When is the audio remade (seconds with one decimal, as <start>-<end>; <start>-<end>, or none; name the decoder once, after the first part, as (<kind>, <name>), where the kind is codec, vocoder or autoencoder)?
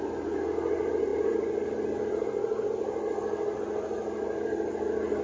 none